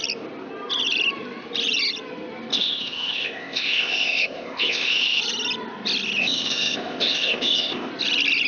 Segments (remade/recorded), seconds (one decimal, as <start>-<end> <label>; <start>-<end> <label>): 0.0-2.5 recorded; 2.5-5.2 remade; 5.2-6.2 recorded; 6.2-7.9 remade; 7.9-8.5 recorded